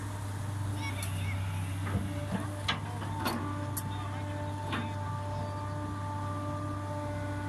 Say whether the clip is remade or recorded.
recorded